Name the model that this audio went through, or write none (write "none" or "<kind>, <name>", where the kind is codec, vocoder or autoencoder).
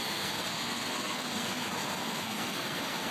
codec, SNAC